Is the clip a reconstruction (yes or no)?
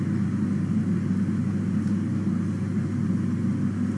no